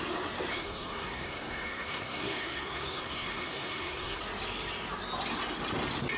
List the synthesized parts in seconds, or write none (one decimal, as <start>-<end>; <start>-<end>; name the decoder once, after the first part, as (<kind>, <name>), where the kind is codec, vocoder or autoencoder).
0.5-4.2 (codec, SNAC)